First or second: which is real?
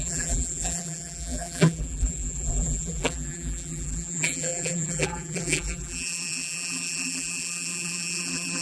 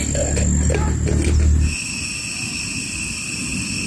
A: second